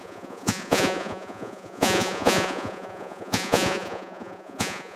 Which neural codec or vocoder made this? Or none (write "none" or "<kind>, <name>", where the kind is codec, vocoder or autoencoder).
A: vocoder, Vocos